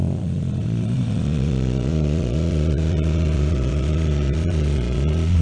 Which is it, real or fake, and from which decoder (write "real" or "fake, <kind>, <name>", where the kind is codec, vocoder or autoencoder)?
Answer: fake, vocoder, Vocos